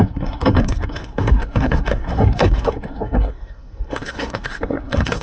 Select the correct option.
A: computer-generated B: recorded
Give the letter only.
A